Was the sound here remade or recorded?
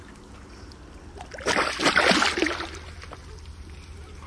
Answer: recorded